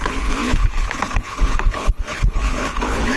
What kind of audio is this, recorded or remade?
remade